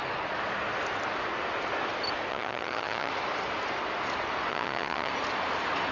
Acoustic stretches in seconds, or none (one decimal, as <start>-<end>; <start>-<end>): 0.0-2.3; 3.1-4.5; 5.1-5.9